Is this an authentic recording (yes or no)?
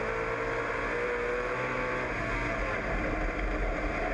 yes